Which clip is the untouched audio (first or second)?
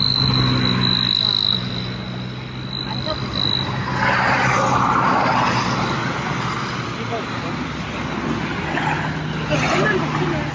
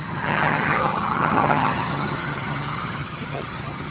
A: first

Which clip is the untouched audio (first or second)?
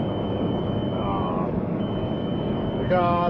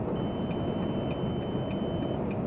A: second